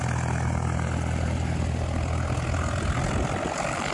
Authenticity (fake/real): real